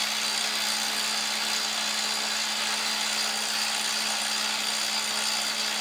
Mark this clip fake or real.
real